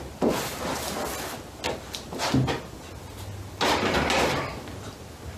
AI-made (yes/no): no